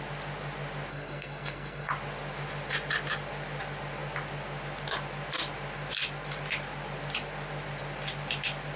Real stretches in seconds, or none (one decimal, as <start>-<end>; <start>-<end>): 0.0-0.9; 1.9-8.8